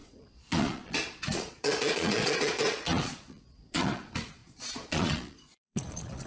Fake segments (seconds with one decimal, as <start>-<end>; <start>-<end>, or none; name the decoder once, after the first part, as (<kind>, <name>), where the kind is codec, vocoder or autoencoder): 0.0-6.3 (vocoder, Vocos)